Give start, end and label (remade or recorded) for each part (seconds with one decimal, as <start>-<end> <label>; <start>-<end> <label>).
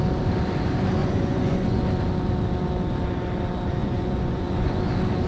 0.0-1.0 recorded; 1.0-1.8 remade; 1.8-3.8 recorded; 3.8-4.8 remade; 4.8-5.3 recorded